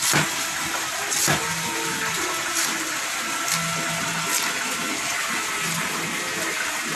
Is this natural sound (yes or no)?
yes